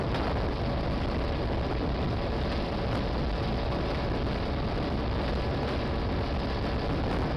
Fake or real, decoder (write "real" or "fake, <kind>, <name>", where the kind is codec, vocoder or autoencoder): fake, vocoder, BigVGAN v2